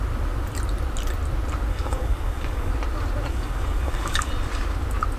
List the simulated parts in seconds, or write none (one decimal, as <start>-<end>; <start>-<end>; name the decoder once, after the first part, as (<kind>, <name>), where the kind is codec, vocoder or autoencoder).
1.7-2.7 (codec, DAC); 3.3-4.3